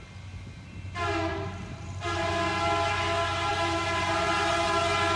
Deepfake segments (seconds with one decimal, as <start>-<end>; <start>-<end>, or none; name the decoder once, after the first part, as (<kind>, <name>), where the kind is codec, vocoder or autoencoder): 1.3-2.3 (vocoder, BigVGAN v2); 3.5-4.5